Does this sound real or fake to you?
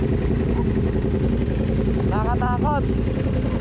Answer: real